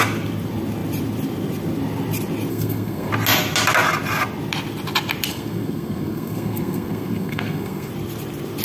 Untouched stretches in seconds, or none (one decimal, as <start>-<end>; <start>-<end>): 0.0-2.5; 3.1-5.3; 7.9-8.6